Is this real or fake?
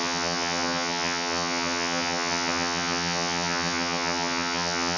fake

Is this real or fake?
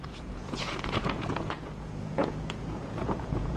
fake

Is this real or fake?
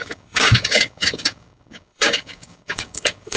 fake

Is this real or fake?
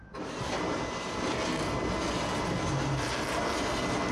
real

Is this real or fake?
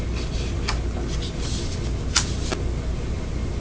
real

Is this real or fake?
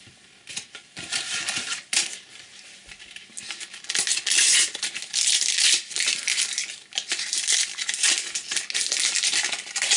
real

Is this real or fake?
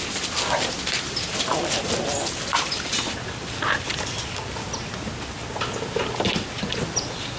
real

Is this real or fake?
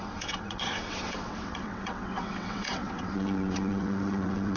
fake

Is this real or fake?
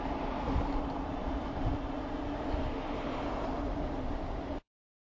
real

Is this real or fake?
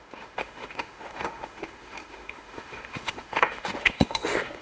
fake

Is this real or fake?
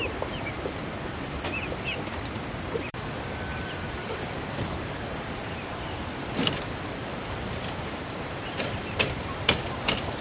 fake